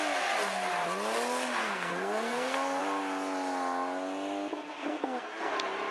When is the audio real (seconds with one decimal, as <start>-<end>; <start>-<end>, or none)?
0.0-1.6; 2.8-4.5; 5.5-5.9